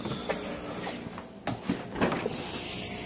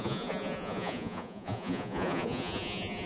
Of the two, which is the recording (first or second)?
first